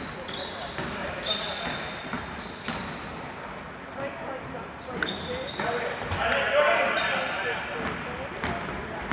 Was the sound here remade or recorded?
recorded